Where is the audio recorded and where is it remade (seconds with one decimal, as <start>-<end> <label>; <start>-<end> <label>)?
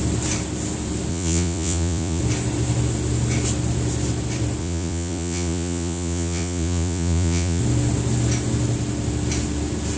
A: 0.0-1.1 recorded; 1.1-2.2 remade; 2.2-4.6 recorded; 4.6-7.6 remade; 7.6-10.0 recorded